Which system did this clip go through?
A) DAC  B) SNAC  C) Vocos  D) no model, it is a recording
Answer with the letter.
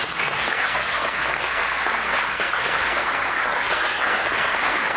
B